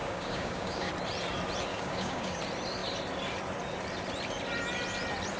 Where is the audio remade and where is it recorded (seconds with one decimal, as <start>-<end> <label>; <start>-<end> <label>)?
0.0-0.9 remade; 0.9-1.7 recorded; 1.7-2.4 remade; 2.4-5.4 recorded